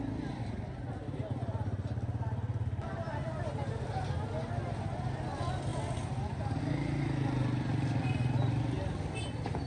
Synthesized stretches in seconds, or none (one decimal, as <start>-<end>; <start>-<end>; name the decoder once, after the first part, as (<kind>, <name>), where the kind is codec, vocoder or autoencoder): none